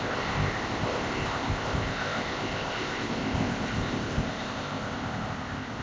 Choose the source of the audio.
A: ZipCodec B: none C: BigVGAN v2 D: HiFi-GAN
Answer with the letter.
A